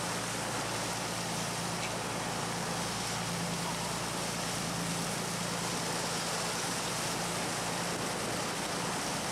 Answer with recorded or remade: recorded